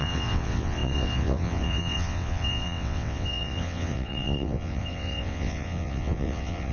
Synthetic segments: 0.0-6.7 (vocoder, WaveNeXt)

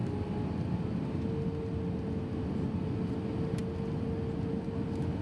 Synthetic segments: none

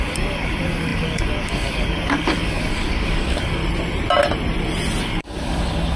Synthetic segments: 0.0-3.6 (codec, DAC); 5.0-6.0

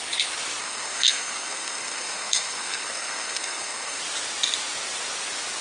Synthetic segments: 0.6-4.0 (codec, SNAC)

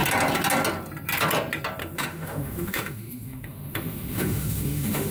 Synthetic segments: 1.8-5.1 (autoencoder, DAC-VAE)

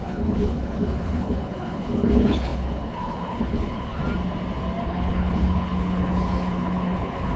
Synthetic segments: 0.0-4.0 (codec, HILCodec); 4.8-7.4